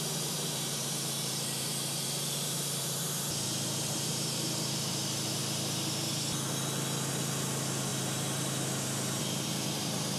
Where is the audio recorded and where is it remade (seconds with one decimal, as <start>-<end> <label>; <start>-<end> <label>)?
0.0-5.4 remade; 5.4-7.1 recorded; 7.1-10.2 remade